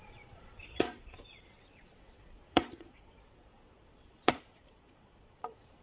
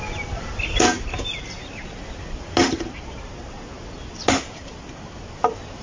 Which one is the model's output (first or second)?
first